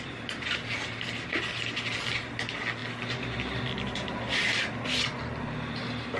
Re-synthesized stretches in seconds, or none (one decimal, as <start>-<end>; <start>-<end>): none